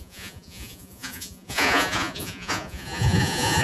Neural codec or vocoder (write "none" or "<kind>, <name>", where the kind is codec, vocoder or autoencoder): vocoder, Vocos